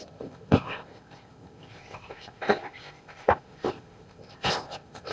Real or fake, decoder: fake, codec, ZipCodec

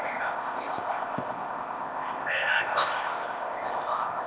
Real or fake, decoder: fake, codec, ZipCodec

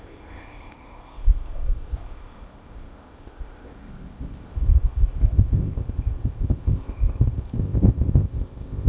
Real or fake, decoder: fake, codec, ZipCodec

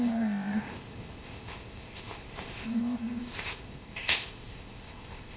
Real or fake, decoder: fake, codec, ZipCodec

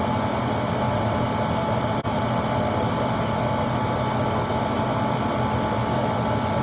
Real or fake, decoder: real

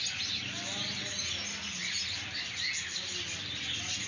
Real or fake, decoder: real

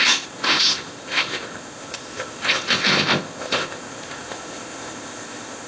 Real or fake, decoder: fake, codec, ZipCodec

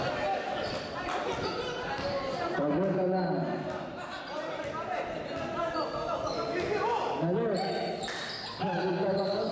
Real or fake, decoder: real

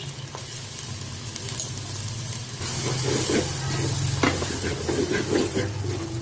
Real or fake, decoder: real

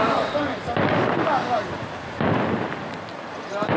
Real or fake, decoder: real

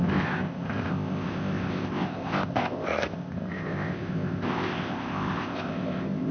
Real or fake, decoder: fake, codec, ZipCodec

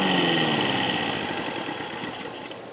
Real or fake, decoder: real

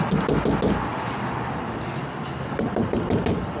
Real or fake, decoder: real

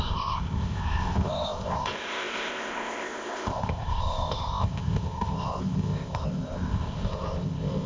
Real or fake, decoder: fake, codec, ZipCodec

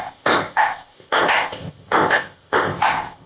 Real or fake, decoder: fake, codec, ZipCodec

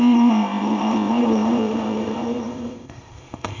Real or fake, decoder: fake, codec, ZipCodec